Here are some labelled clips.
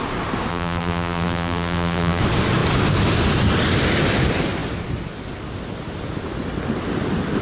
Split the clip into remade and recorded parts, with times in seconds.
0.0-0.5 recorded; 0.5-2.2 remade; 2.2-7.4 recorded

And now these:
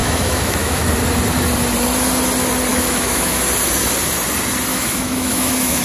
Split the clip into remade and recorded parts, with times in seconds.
0.0-0.9 remade; 0.9-2.7 recorded; 2.7-3.4 remade; 3.4-4.7 recorded; 4.7-5.8 remade

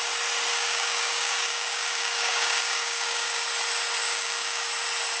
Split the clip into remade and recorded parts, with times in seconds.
0.0-0.5 recorded; 0.5-3.4 remade; 3.4-4.0 recorded; 4.0-4.7 remade; 4.7-5.2 recorded

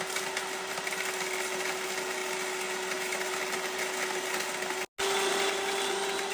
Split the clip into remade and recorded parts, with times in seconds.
0.0-6.3 recorded

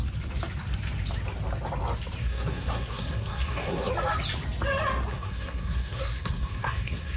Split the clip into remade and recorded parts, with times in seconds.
0.0-2.2 recorded; 2.2-3.9 remade; 3.9-5.1 recorded; 5.1-7.2 remade

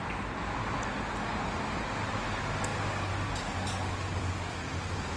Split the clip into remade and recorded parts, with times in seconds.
0.0-5.2 recorded